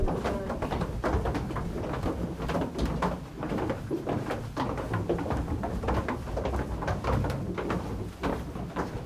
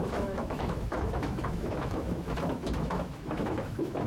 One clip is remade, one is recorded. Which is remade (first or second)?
second